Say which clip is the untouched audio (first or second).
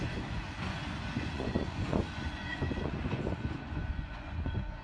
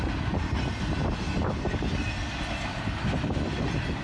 second